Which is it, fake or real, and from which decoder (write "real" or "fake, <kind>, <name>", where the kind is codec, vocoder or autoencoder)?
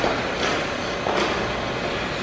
real